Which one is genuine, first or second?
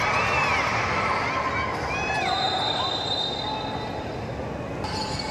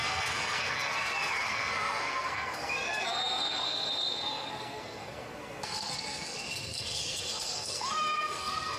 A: first